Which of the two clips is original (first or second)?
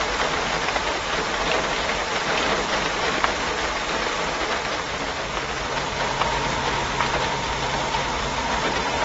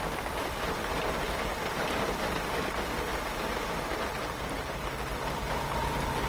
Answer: first